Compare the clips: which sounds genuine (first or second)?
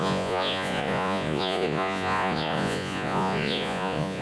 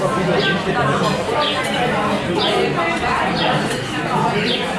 second